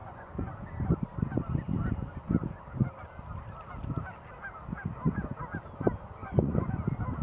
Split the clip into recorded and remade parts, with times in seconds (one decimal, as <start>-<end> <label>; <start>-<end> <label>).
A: 0.0-0.5 remade; 0.5-6.2 recorded; 6.2-6.8 remade; 6.8-7.2 recorded